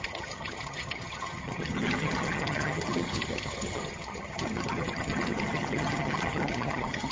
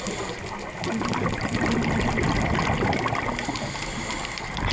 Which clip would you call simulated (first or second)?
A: first